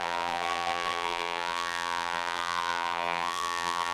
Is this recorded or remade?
remade